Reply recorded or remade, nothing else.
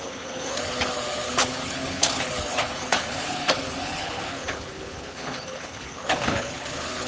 remade